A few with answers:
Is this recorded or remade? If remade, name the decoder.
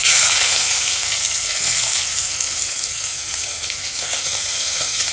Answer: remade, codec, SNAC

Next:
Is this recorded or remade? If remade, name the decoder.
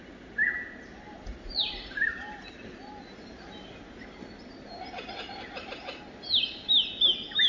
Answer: recorded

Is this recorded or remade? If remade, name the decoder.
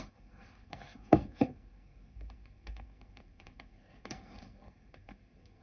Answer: remade, codec, SNAC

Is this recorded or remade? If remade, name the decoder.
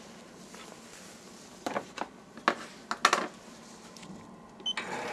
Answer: recorded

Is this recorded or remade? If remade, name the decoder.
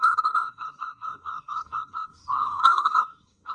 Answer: remade, codec, SNAC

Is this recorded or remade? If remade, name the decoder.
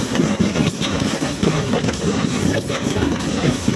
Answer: remade, codec, SNAC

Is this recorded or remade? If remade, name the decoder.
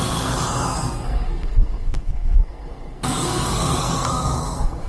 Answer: remade, codec, SNAC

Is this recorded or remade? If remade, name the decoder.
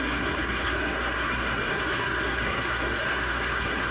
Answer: remade, codec, SNAC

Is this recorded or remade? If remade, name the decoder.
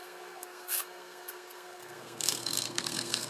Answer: remade, codec, SNAC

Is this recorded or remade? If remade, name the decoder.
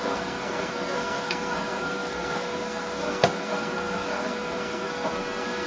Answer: remade, codec, SNAC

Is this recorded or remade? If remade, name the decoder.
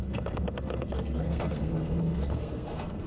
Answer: remade, codec, SNAC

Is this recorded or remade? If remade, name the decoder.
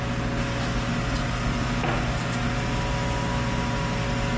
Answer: recorded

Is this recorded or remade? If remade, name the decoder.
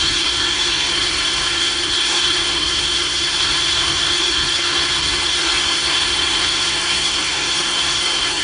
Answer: remade, codec, SNAC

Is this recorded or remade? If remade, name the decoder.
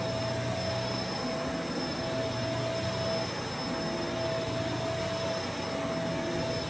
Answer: recorded